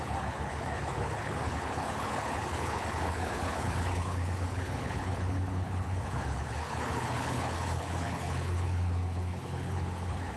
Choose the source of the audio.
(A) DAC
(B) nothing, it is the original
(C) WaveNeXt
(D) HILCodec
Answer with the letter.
D